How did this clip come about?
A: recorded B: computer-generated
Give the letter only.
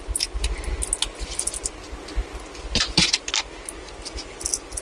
A